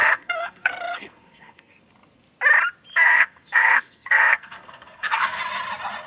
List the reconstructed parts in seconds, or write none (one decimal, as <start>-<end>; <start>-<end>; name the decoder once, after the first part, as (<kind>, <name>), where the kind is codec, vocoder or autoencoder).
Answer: 0.0-1.9 (codec, SNAC); 2.9-5.4